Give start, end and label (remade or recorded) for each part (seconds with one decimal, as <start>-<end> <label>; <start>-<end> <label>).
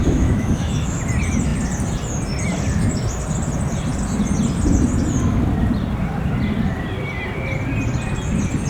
0.0-1.0 remade; 1.0-8.7 recorded